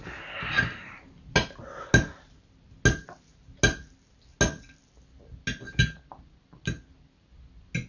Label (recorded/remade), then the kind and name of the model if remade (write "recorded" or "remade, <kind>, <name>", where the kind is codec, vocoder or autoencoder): recorded